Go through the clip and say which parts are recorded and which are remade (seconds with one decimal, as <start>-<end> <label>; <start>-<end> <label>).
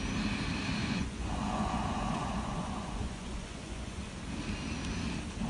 0.0-0.8 recorded; 0.8-4.1 remade; 4.1-5.5 recorded